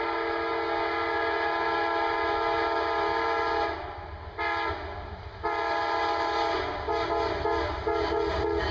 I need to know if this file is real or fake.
real